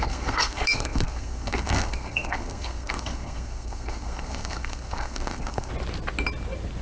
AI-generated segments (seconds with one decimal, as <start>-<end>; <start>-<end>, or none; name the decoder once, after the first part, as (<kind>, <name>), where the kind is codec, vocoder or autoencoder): 0.0-5.7 (codec, SNAC)